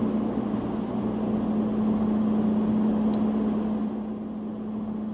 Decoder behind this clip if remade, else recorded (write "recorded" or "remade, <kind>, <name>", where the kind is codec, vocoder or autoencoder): recorded